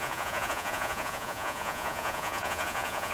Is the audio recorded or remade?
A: remade